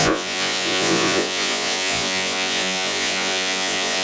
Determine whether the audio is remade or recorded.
remade